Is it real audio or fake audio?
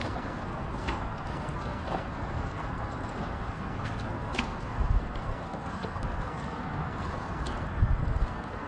fake